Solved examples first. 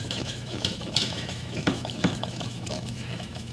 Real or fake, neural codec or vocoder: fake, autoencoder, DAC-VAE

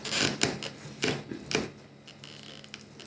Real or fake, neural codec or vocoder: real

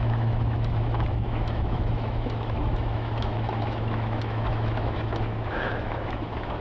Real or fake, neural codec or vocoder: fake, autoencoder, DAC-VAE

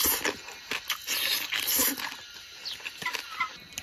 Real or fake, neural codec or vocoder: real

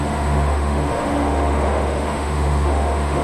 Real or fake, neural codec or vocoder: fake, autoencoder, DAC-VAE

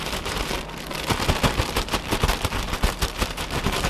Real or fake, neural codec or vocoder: real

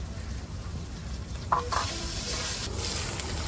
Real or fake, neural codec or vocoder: real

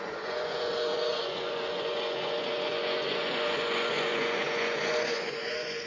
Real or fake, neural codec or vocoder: fake, vocoder, Vocos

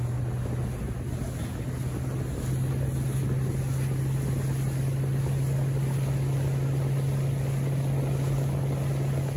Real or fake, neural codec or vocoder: real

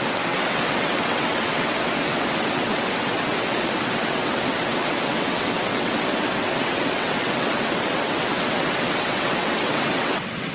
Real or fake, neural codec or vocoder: fake, vocoder, WaveNeXt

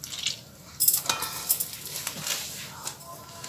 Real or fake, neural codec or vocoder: real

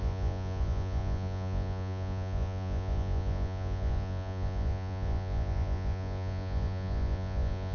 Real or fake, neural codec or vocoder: fake, vocoder, Vocos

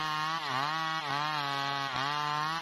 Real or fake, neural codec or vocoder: real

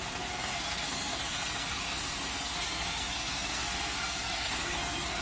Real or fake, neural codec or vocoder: fake, codec, SNAC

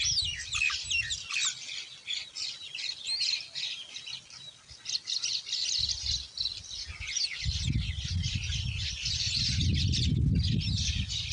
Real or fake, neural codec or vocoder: real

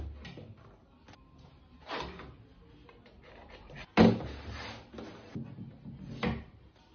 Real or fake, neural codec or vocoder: real